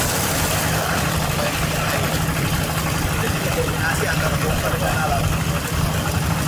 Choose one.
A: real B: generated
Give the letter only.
A